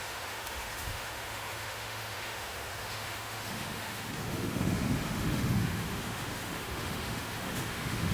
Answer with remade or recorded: remade